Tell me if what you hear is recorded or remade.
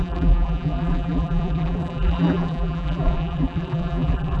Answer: remade